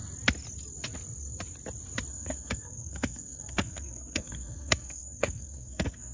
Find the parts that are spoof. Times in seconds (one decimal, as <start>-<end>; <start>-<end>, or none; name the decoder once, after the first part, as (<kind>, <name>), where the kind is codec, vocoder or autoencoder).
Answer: 2.1-6.1 (codec, SNAC)